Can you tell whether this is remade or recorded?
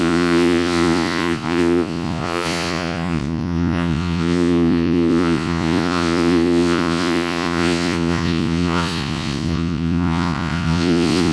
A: remade